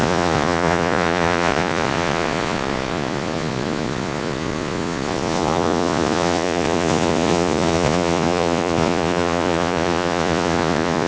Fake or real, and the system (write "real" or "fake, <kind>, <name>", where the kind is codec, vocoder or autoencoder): fake, vocoder, Vocos